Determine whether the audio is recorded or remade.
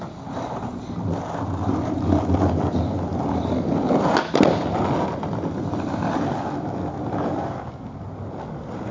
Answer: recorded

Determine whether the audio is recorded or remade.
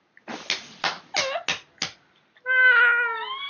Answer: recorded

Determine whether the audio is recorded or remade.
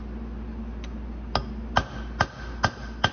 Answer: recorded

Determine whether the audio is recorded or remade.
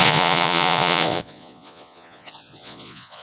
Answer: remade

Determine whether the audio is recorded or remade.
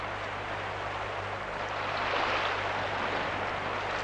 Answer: recorded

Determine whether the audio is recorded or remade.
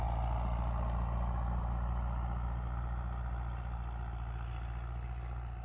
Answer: recorded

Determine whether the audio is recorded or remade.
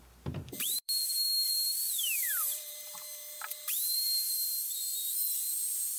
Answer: remade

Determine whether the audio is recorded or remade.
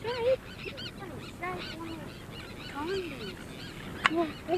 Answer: recorded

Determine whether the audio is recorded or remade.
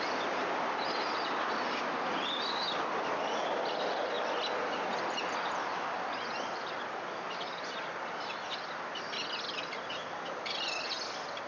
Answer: recorded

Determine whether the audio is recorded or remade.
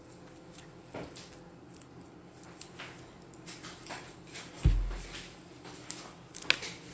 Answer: recorded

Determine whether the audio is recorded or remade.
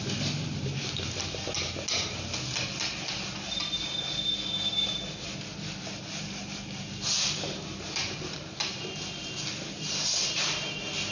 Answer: recorded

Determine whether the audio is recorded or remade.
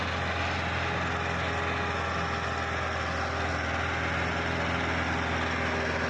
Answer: recorded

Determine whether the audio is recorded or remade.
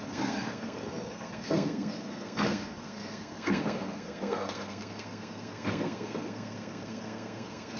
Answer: remade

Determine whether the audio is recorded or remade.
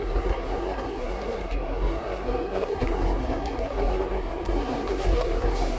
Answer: remade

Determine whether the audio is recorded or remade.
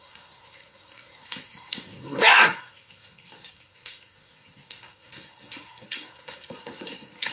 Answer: remade